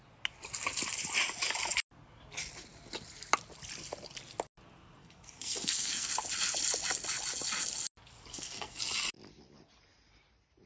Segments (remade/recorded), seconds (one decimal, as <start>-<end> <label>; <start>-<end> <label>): 0.0-5.0 recorded; 5.0-6.1 remade; 6.1-8.3 recorded; 8.3-8.8 remade; 8.8-10.7 recorded